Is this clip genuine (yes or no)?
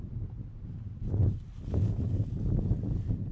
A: yes